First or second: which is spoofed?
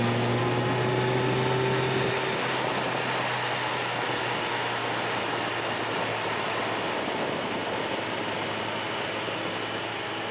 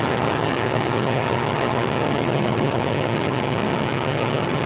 second